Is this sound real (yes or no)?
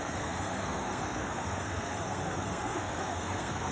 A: no